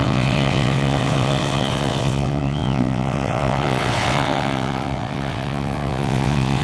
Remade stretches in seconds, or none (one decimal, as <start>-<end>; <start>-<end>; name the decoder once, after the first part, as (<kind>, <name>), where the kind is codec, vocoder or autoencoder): 0.0-6.6 (vocoder, WaveNeXt)